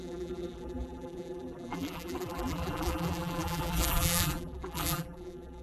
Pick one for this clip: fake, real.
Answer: fake